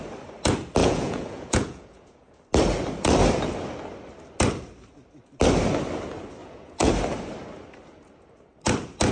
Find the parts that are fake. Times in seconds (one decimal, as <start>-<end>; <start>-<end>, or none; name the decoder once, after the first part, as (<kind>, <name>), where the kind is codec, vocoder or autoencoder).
0.8-2.3 (vocoder, Vocos); 6.4-6.9